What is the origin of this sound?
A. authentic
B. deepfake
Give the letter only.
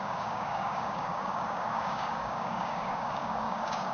B